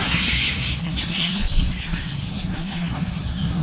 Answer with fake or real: fake